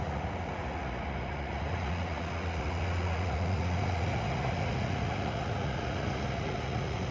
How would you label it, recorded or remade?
remade